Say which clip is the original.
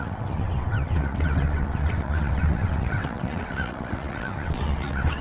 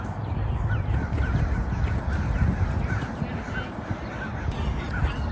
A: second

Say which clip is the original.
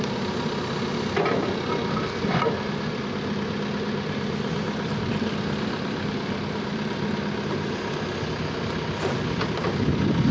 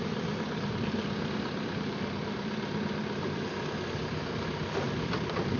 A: first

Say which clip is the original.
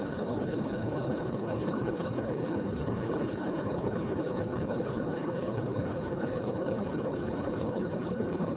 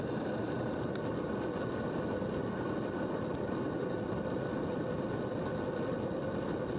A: second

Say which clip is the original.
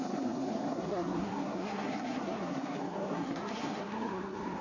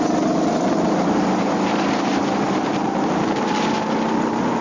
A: second